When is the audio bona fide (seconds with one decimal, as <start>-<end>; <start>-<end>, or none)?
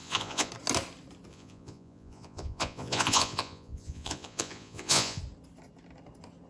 0.5-1.3; 5.2-6.5